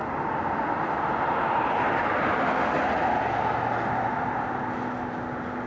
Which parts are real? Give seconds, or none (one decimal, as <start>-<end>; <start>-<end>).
0.0-5.7